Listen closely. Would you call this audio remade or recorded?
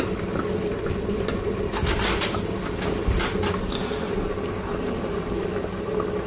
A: remade